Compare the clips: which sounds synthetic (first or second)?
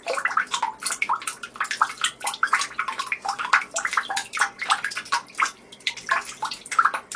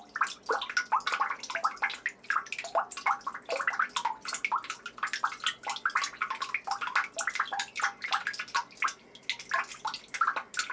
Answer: first